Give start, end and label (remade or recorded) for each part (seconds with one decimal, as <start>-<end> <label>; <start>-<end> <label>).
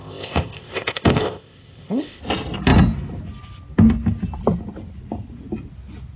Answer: 0.0-2.2 remade; 2.2-6.2 recorded